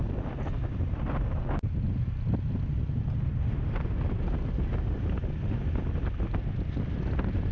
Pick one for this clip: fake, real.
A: real